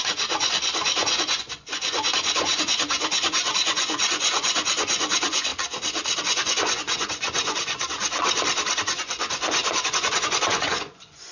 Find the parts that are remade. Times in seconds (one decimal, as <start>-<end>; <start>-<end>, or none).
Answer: 0.0-5.5; 6.2-8.2; 8.8-11.3

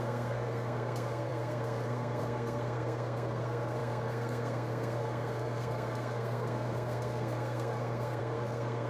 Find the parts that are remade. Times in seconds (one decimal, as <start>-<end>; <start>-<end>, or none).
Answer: 0.0-8.9